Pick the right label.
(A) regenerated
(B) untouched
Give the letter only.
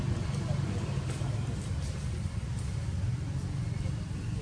B